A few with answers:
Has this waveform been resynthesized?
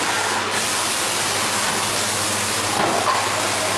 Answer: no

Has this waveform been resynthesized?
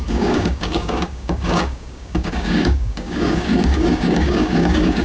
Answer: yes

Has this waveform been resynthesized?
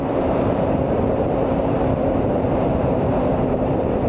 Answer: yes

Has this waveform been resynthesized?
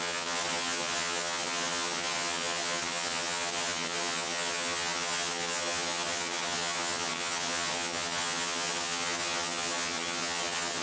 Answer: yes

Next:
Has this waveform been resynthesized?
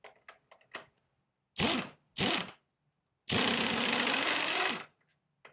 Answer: no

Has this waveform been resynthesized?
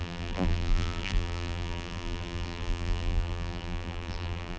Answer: yes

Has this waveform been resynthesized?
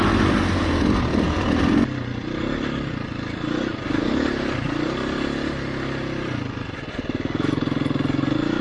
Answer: no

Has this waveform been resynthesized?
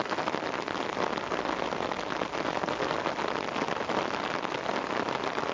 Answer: no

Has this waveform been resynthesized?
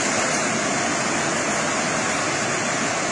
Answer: no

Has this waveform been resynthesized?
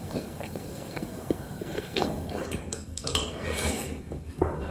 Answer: yes